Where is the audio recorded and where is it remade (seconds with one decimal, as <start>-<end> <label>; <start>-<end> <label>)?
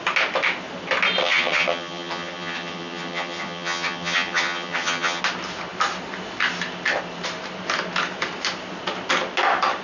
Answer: 0.0-1.2 recorded; 1.2-5.2 remade; 5.2-9.8 recorded